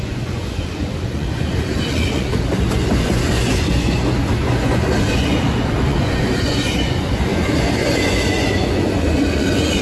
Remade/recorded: remade